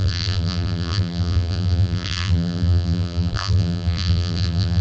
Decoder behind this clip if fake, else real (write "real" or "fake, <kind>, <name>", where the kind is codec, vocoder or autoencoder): fake, vocoder, BigVGAN v2